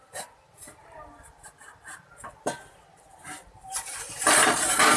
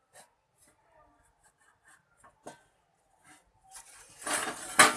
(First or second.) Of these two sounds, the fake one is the first